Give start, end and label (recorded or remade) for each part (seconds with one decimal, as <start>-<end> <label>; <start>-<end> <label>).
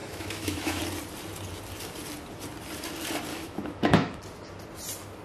0.0-0.8 remade; 0.8-3.3 recorded; 3.3-4.2 remade; 4.2-5.2 recorded